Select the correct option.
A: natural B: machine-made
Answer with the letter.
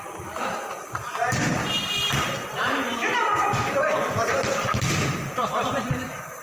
B